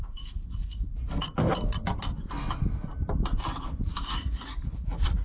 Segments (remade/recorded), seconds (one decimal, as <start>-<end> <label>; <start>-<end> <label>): 0.0-0.9 remade; 0.9-4.0 recorded; 4.0-5.2 remade